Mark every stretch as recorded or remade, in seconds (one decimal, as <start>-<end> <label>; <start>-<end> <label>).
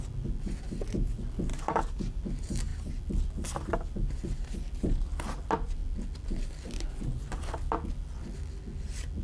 0.0-1.5 recorded; 1.5-2.2 remade; 2.2-9.2 recorded